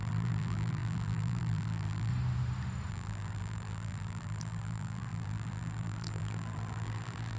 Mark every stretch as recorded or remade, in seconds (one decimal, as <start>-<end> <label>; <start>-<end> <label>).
0.0-2.1 remade; 2.1-2.9 recorded; 2.9-7.4 remade